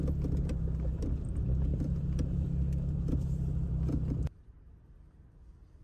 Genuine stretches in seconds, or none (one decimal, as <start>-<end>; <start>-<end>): 0.0-1.7; 4.8-5.8